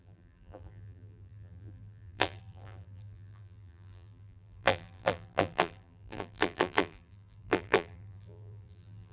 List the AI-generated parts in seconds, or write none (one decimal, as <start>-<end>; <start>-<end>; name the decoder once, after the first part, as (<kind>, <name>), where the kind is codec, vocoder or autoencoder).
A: 0.0-9.1 (vocoder, BigVGAN v2)

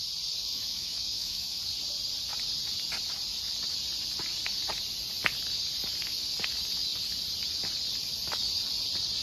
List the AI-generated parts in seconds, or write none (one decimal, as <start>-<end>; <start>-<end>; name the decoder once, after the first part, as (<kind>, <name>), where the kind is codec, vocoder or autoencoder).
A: 0.4-1.6 (autoencoder, DAC-VAE)